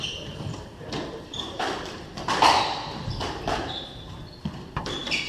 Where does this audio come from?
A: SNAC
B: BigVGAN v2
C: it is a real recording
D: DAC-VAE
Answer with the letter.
B